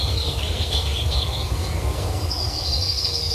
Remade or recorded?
remade